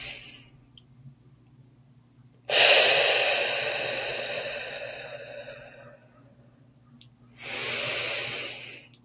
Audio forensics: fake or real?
real